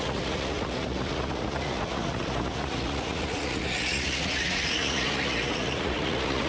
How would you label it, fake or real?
fake